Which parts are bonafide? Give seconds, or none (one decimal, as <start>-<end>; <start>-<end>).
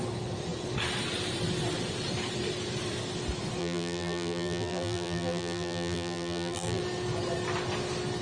0.0-3.6; 6.8-8.2